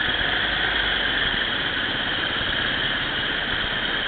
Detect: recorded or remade recorded